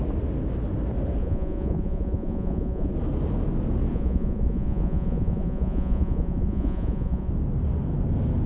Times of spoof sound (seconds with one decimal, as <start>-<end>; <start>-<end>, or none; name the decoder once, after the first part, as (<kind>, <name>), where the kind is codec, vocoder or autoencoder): 1.2-2.9 (vocoder, Vocos); 3.9-7.3